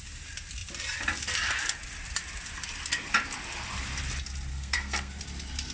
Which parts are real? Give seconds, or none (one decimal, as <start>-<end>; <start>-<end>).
0.0-4.5; 5.2-5.7